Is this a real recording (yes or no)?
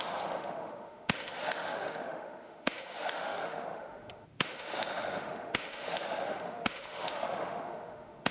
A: no